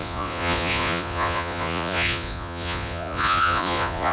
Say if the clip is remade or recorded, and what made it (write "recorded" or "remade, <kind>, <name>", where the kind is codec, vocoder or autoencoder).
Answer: remade, vocoder, Vocos